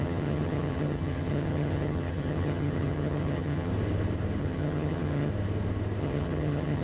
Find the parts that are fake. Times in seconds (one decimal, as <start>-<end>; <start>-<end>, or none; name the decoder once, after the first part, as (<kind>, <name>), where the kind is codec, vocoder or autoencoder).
0.0-3.7 (vocoder, HiFi-GAN); 4.4-5.3; 6.0-6.8

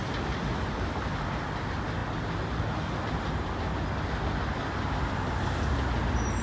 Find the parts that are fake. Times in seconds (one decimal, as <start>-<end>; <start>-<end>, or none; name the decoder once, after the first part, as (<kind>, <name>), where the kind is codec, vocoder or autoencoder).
none